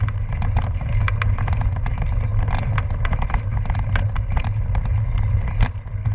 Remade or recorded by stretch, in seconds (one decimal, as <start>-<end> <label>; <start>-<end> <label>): 0.0-6.1 recorded